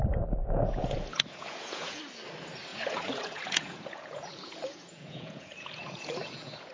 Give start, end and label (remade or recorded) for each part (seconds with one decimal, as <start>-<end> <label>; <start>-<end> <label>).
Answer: 0.0-0.4 recorded; 0.4-2.0 remade; 2.0-2.7 recorded; 2.7-6.7 remade